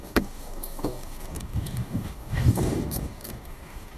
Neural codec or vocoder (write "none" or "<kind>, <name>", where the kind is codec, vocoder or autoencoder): codec, DAC